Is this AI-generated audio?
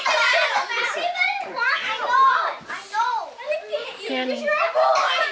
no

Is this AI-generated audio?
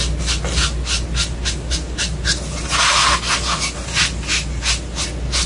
no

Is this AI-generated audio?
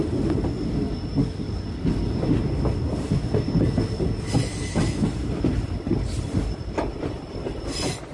no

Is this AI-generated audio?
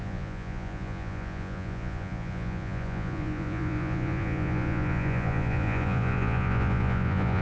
yes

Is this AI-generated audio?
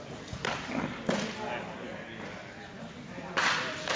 no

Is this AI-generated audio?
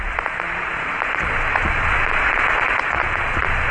yes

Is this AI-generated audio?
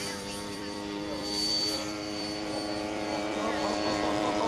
yes